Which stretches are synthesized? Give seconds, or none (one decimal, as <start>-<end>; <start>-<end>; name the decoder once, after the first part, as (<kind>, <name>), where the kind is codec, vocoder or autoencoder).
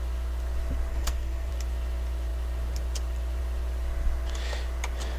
0.9-1.5 (codec, SNAC)